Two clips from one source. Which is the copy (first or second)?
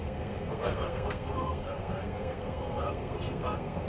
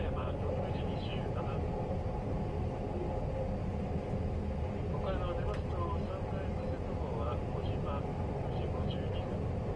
first